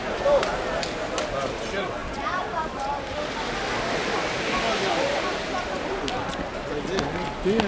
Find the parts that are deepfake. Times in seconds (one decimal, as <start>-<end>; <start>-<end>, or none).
none